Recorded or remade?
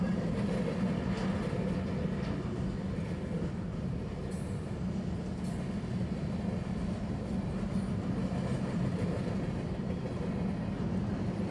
recorded